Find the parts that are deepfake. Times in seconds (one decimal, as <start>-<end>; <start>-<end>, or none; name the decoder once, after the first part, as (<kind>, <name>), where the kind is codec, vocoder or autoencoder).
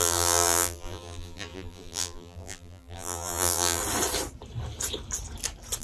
0.0-3.8 (vocoder, BigVGAN v2)